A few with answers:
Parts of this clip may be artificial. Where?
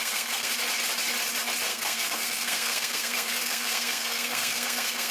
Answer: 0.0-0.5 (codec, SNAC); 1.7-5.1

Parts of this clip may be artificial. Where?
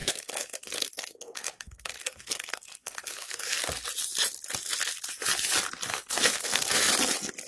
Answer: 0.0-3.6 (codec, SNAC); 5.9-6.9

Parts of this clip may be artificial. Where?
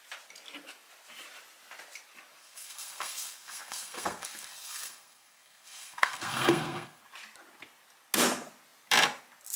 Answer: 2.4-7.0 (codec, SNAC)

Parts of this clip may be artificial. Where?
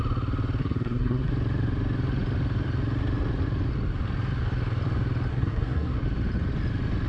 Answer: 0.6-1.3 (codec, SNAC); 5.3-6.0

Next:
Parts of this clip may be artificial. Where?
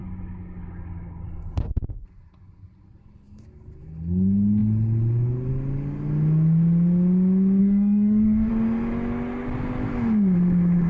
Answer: 7.6-8.5 (codec, SNAC)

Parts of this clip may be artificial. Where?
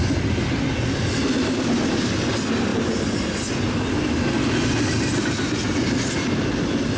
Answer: none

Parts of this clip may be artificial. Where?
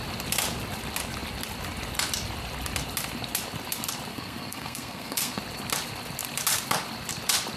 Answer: 4.1-5.4 (codec, SNAC)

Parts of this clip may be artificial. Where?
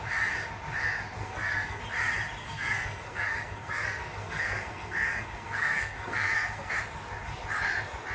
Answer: 1.2-1.8 (codec, SNAC); 2.4-6.7